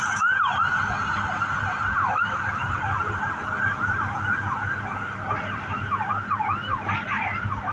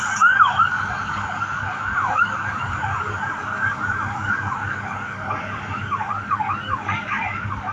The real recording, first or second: first